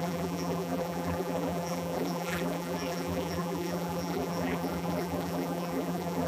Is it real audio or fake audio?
fake